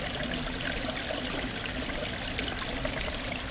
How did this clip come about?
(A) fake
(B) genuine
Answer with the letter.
B